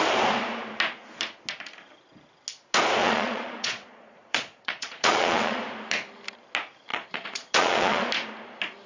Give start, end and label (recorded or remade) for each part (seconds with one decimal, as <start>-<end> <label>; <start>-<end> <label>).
0.0-3.0 recorded; 3.0-5.6 remade; 5.6-6.9 recorded; 6.9-8.1 remade; 8.1-8.9 recorded